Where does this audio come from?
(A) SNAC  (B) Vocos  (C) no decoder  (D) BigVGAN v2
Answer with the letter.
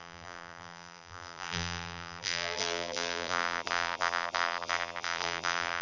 D